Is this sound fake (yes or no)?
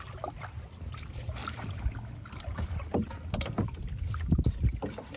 yes